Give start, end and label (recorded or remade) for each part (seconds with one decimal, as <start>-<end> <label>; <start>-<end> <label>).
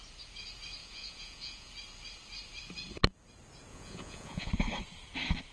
0.0-0.8 recorded; 0.8-1.7 remade; 1.7-3.7 recorded; 3.7-4.5 remade; 4.5-5.5 recorded